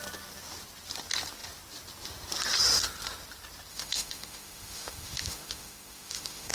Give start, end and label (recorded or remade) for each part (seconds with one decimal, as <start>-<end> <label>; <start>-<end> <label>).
0.0-3.7 recorded; 3.7-6.5 remade